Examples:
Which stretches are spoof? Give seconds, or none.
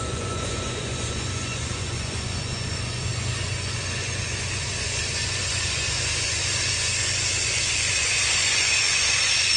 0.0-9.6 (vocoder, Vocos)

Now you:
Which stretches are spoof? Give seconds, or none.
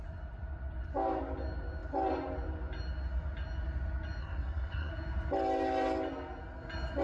4.2-4.9 (codec, SNAC)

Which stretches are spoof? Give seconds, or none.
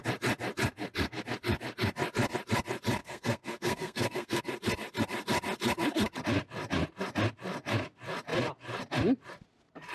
3.0-4.4 (codec, SNAC)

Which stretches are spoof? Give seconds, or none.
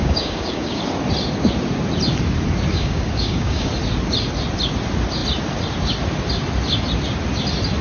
0.0-0.8 (codec, DAC); 2.7-3.7